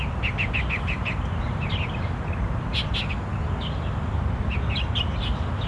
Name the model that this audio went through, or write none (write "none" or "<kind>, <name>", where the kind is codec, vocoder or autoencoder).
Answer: none